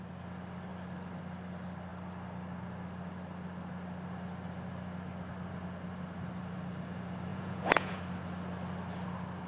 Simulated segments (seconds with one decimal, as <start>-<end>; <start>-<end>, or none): 7.3-8.0